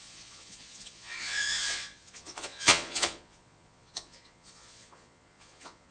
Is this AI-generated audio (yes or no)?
yes